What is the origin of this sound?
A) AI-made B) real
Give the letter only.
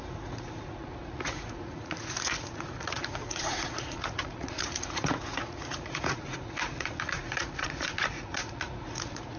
A